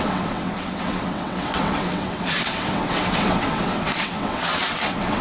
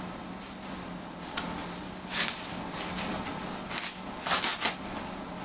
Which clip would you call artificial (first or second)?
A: first